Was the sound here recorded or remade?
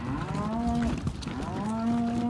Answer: recorded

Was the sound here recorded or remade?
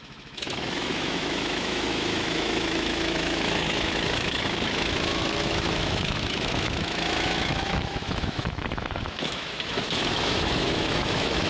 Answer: remade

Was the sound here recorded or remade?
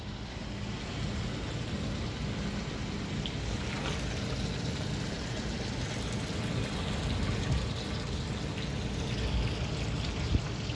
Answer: recorded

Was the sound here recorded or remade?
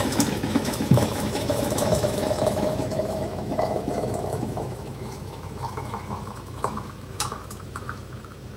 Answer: remade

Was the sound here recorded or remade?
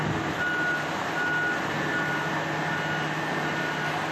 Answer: recorded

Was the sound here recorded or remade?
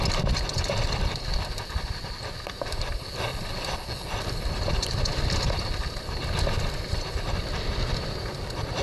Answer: recorded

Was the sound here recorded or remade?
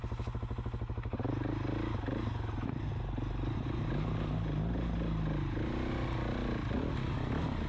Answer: recorded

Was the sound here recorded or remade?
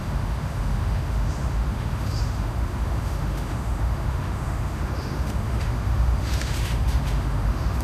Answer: remade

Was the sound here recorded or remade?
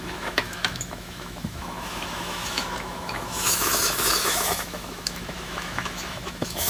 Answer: remade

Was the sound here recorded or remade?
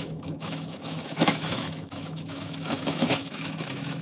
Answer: remade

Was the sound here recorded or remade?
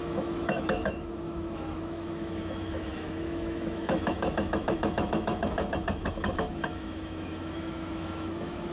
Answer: remade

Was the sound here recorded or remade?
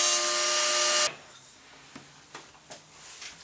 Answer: recorded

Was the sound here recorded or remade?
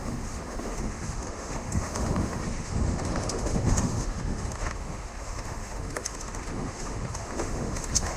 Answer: remade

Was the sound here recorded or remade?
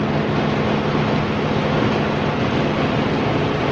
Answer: recorded